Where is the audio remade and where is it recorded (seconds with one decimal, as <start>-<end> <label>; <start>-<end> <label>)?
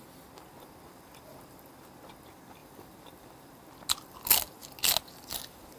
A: 0.0-2.6 recorded; 2.6-3.7 remade; 3.7-5.8 recorded